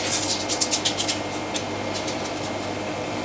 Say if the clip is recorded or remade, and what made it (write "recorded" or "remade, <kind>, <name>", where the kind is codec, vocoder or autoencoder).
recorded